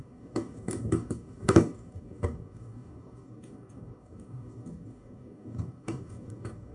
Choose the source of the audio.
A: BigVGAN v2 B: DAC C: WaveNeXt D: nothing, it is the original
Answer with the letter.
B